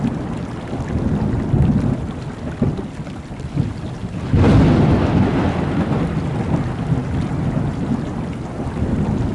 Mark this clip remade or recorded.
recorded